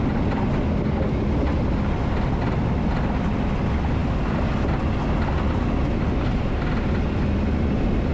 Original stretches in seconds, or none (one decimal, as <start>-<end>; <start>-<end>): 0.0-8.1

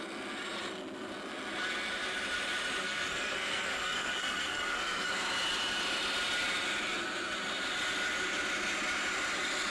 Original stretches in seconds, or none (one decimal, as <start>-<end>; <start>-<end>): 0.0-2.8; 5.1-9.7